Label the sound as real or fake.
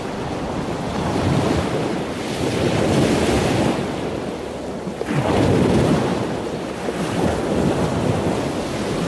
real